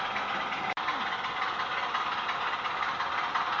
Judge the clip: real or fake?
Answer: real